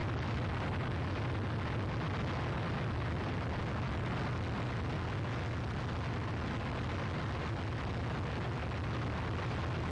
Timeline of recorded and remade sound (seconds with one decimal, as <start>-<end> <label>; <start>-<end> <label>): 0.0-9.9 recorded